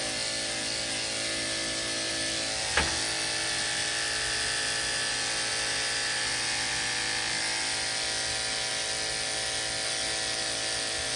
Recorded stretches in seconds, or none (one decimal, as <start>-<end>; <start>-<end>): 0.0-11.2